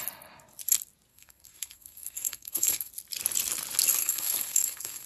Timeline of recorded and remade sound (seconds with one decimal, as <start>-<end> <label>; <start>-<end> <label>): 0.0-1.1 recorded; 1.1-2.9 remade; 2.9-4.0 recorded; 4.0-5.1 remade